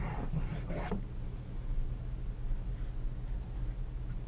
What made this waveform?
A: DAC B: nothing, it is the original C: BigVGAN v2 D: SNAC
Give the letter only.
B